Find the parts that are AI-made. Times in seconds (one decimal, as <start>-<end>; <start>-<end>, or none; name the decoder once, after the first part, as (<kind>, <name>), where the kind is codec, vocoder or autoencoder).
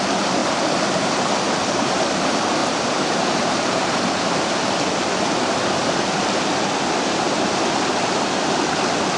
2.6-3.9 (vocoder, BigVGAN v2)